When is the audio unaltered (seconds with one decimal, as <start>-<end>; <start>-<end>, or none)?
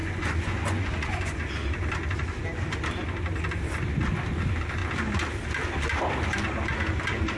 1.5-7.4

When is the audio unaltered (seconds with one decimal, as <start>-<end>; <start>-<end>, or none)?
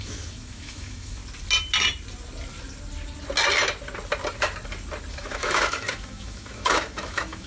1.2-5.1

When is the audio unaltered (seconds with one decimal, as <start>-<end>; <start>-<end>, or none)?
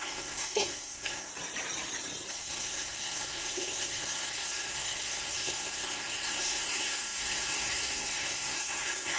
1.3-2.3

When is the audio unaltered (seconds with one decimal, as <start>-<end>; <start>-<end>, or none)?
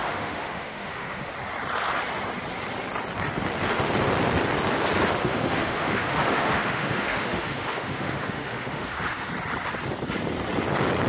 1.3-5.2; 9.3-11.1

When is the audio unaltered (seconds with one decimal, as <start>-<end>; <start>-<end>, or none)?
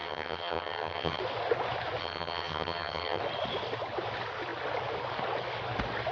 1.2-2.0; 3.2-6.1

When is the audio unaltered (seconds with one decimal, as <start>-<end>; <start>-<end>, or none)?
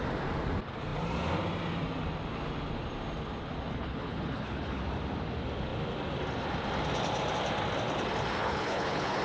0.0-3.7; 4.8-8.4